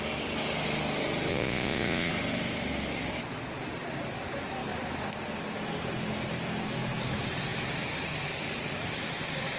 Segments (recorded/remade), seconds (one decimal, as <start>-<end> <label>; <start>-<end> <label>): 0.0-1.3 recorded; 1.3-2.1 remade; 2.1-9.6 recorded